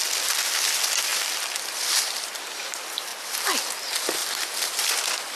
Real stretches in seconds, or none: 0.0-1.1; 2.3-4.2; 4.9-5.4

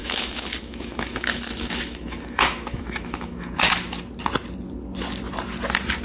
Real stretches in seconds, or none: 3.6-6.0

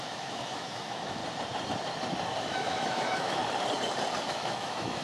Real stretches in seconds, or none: 1.2-2.4; 3.4-4.2

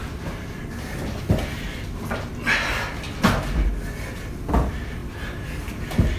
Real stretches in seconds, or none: 0.0-6.2

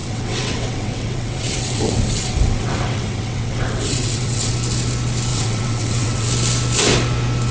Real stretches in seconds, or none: 4.5-5.3; 6.3-7.5

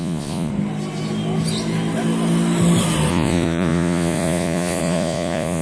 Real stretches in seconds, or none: 0.5-3.1

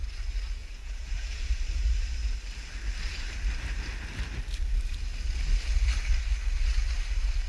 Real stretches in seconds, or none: 0.0-0.6; 1.5-7.5

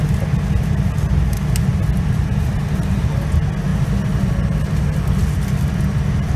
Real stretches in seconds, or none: 0.0-6.4